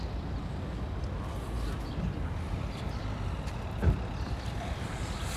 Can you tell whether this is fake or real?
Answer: real